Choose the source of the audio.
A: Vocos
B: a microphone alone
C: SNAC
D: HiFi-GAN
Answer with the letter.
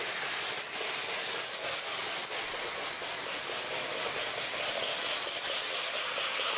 B